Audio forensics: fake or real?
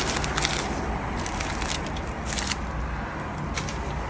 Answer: real